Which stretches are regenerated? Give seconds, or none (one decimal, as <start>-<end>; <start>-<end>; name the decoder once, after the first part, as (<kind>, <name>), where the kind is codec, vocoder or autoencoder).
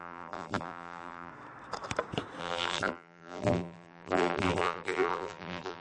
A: 0.0-1.3 (vocoder, BigVGAN v2); 2.4-5.8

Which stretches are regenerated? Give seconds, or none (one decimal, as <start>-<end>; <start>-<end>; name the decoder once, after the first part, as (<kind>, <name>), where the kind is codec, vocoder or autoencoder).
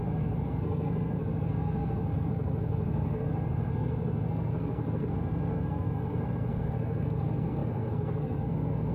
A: 0.0-8.9 (codec, SNAC)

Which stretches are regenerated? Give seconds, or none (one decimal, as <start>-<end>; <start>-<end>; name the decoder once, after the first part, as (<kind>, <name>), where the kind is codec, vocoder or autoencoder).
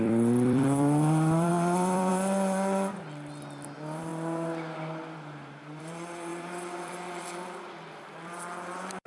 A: 0.0-4.1 (vocoder, BigVGAN v2); 5.8-9.1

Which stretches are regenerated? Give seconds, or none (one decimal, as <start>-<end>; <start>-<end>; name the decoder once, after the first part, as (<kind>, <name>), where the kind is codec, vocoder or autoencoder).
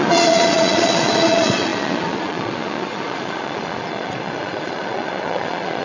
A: 0.0-5.8 (vocoder, Vocos)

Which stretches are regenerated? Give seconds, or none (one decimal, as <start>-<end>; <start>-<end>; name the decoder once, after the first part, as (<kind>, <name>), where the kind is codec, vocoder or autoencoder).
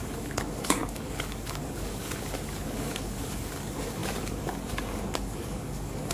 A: 0.0-6.1 (codec, DAC)